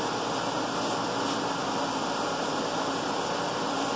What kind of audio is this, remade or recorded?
recorded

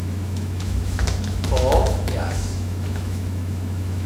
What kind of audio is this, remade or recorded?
remade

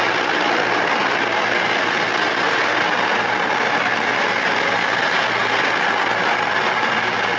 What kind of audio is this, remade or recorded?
recorded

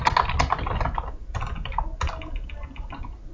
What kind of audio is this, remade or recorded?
recorded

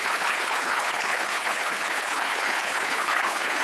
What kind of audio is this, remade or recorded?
remade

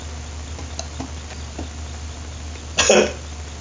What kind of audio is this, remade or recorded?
recorded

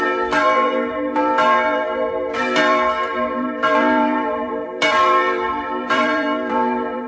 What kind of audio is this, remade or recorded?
remade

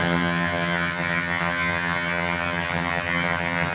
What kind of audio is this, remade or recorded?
remade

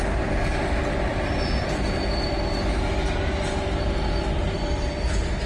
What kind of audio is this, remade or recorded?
recorded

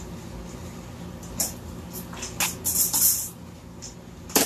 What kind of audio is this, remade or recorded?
recorded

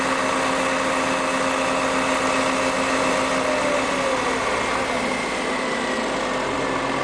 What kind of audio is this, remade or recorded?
recorded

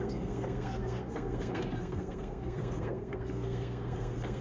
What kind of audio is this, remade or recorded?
remade